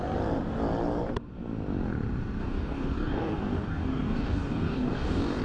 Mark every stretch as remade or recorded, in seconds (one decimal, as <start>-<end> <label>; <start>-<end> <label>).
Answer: 0.0-2.4 recorded; 2.4-5.4 remade